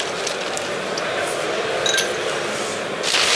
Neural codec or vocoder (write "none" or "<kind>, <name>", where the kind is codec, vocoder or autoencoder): none